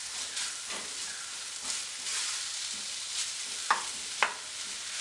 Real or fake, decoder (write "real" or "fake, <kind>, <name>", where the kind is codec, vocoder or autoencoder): real